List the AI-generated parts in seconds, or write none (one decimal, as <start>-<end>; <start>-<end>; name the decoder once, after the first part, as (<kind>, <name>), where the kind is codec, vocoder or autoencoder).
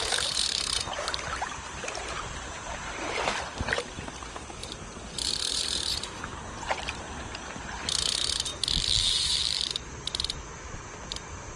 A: 0.0-11.6 (vocoder, BigVGAN v2)